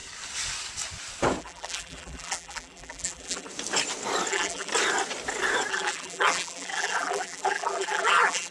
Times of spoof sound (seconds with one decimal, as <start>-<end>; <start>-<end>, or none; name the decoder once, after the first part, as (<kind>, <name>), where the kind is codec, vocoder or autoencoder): 1.4-3.5 (vocoder, BigVGAN v2); 4.3-4.7; 5.7-8.5